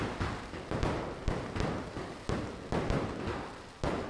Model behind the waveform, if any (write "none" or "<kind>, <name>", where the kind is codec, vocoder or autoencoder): none